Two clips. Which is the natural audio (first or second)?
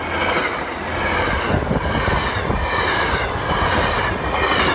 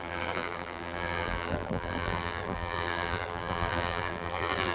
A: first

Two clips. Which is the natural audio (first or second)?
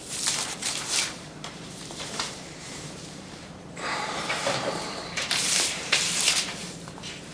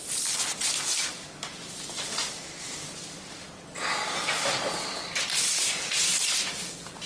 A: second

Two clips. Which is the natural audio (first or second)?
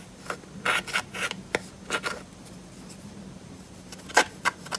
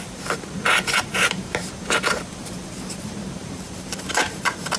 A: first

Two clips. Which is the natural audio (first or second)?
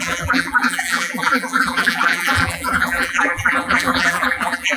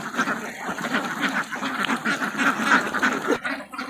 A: second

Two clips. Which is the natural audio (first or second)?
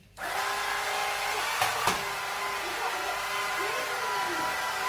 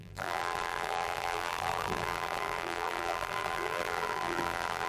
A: first